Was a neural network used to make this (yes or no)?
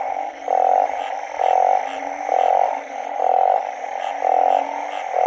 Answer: no